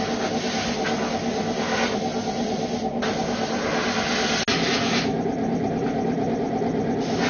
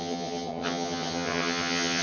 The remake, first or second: second